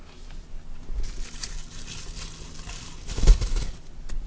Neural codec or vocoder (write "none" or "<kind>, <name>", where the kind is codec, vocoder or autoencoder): none